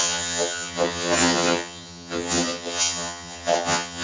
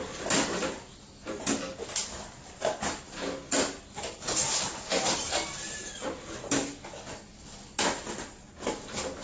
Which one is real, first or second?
second